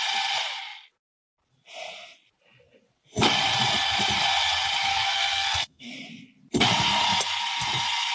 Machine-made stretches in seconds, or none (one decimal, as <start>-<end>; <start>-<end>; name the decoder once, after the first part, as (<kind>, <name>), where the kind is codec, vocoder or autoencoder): 4.9-5.9 (codec, SNAC)